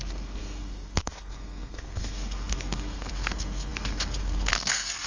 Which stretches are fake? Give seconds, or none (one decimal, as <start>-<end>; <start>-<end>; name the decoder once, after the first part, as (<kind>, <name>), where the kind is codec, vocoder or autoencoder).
0.0-5.1 (codec, SNAC)